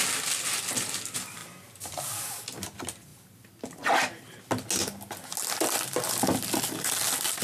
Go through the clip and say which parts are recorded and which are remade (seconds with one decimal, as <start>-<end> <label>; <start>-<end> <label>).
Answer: 0.0-7.4 recorded